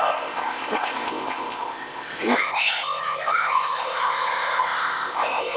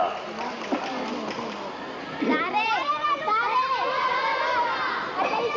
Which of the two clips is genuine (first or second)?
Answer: second